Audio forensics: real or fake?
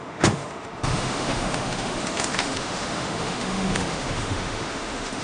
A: fake